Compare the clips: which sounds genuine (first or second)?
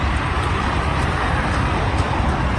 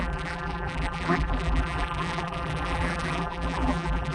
first